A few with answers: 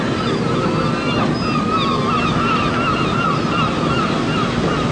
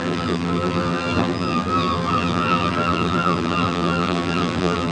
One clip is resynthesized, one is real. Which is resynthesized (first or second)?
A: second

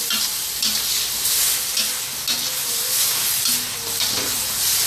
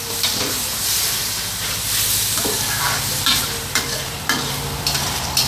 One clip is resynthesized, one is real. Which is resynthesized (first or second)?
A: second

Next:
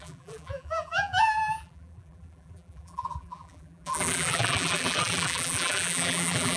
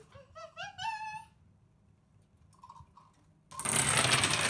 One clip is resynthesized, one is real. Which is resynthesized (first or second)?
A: first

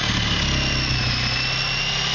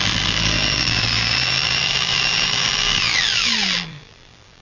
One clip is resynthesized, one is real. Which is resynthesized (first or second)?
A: second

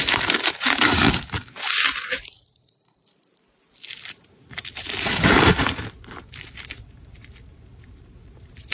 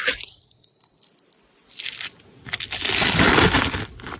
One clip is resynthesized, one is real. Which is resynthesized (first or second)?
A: first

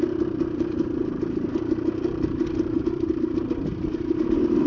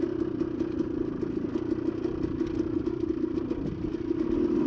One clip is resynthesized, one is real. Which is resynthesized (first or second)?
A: first